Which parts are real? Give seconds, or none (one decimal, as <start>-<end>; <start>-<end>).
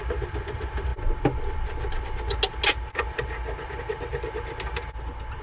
0.0-5.4